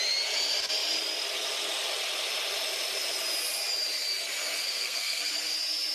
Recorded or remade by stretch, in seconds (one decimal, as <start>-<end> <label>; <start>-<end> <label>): 0.0-4.6 recorded; 4.6-5.3 remade; 5.3-5.9 recorded